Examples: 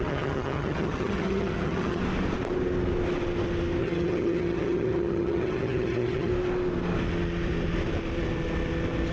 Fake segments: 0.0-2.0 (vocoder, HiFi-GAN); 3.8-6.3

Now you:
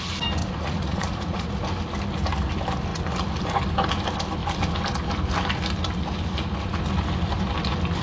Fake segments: 0.4-1.5 (vocoder, Vocos)

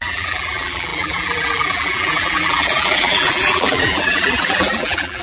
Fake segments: 0.0-5.2 (vocoder, BigVGAN v2)

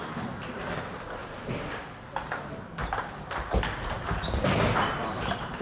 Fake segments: 1.2-1.7 (vocoder, BigVGAN v2); 2.8-5.6

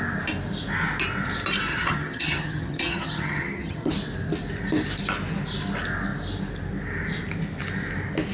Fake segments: 1.7-3.9 (vocoder, HiFi-GAN)

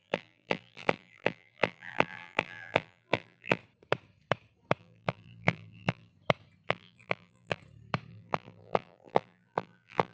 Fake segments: 0.0-3.6 (vocoder, BigVGAN v2); 4.8-6.1; 6.7-7.6; 8.1-10.1